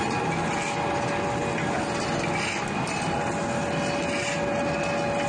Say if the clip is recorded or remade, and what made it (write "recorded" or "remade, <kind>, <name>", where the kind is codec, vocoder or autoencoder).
recorded